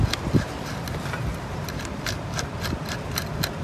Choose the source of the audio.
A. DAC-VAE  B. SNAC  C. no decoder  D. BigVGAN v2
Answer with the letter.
C